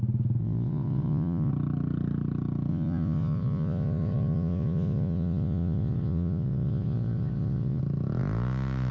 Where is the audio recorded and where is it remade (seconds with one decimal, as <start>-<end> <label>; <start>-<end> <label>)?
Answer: 0.0-0.4 recorded; 0.4-1.5 remade; 1.5-2.7 recorded; 2.7-7.8 remade; 7.8-8.9 recorded